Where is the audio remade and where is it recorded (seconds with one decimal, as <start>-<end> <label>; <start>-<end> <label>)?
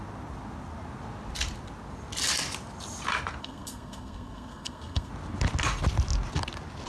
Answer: 0.0-3.4 recorded; 3.4-5.1 remade; 5.1-6.9 recorded